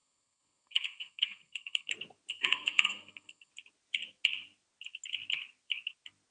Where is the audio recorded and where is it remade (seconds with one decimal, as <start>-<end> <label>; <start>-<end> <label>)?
0.0-1.9 remade; 1.9-2.3 recorded; 2.3-3.5 remade; 3.5-6.3 recorded